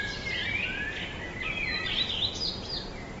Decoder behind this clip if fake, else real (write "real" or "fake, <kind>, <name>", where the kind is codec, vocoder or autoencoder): real